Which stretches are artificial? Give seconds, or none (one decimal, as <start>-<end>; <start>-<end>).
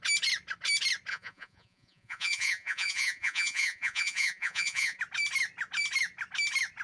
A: 1.1-5.0